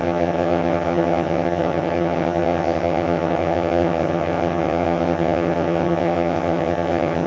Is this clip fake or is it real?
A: fake